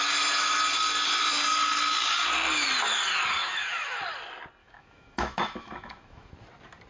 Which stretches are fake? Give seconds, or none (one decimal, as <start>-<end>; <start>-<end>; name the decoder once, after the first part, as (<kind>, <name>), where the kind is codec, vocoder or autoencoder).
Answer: 3.4-4.0 (autoencoder, DAC-VAE); 4.6-6.3